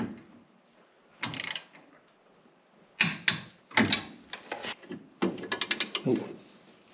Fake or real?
real